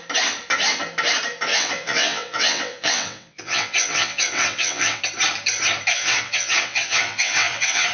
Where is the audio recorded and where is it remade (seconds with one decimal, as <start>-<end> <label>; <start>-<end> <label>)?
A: 0.0-1.5 recorded; 1.5-5.0 remade; 5.0-5.9 recorded; 5.9-7.9 remade